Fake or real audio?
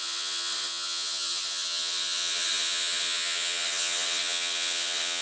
fake